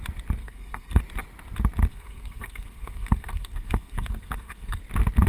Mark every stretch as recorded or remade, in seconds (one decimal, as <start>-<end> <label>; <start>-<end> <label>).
0.0-0.4 recorded; 0.4-1.0 remade; 1.0-1.9 recorded; 1.9-4.8 remade; 4.8-5.3 recorded